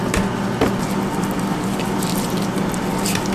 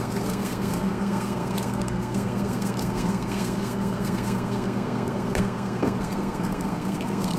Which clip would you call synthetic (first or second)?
second